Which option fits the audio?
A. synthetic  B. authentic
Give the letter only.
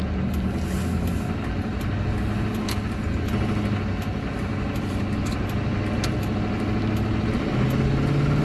B